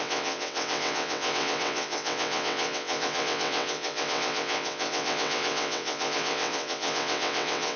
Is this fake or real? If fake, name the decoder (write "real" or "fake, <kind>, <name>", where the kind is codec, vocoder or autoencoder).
fake, vocoder, WaveNeXt